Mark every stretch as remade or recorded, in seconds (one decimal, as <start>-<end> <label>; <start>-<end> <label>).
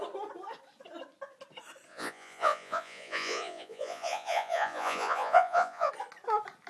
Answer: 0.0-1.9 recorded; 1.9-5.9 remade; 5.9-6.7 recorded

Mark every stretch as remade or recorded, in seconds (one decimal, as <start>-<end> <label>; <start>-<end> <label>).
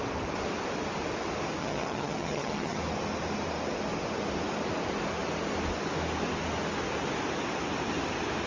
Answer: 0.0-1.6 recorded; 1.6-2.8 remade; 2.8-8.5 recorded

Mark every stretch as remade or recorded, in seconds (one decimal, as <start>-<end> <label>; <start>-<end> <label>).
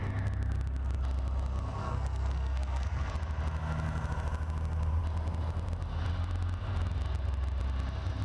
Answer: 0.0-1.8 recorded; 1.8-3.1 remade; 3.1-8.2 recorded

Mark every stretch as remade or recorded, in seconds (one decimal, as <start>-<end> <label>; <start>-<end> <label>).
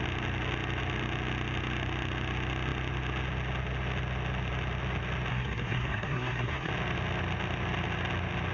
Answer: 0.0-5.3 recorded; 5.3-6.7 remade; 6.7-8.5 recorded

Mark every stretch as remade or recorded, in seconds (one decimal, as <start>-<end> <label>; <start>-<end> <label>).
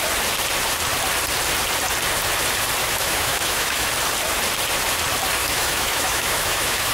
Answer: 0.0-2.8 recorded; 2.8-3.9 remade; 3.9-5.4 recorded; 5.4-6.9 remade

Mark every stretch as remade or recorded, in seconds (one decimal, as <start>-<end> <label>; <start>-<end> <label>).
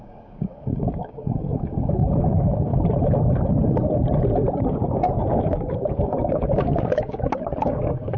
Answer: 0.0-2.7 remade; 2.7-4.6 recorded; 4.6-8.2 remade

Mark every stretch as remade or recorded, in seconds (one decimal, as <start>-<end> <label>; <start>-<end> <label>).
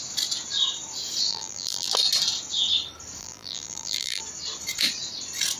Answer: 0.0-1.3 recorded; 1.3-1.9 remade; 1.9-3.2 recorded; 3.2-4.2 remade; 4.2-5.6 recorded